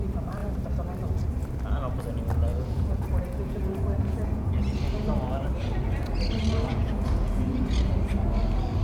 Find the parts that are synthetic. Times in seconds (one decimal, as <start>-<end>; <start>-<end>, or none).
2.5-4.5; 6.7-7.9